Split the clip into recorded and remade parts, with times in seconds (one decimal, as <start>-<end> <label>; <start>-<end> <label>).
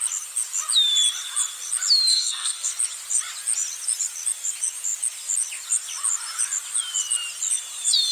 0.0-2.1 recorded; 2.1-2.7 remade; 2.7-8.1 recorded